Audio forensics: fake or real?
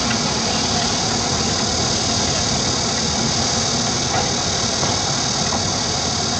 real